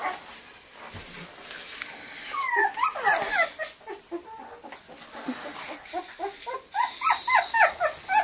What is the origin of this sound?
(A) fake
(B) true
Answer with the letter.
B